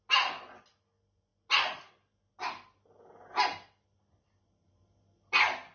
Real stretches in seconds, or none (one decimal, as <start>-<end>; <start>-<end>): 0.0-5.7